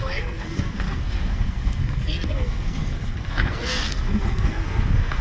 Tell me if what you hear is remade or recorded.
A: remade